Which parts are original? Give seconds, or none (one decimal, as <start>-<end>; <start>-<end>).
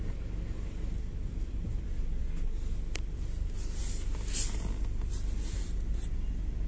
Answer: 0.0-6.7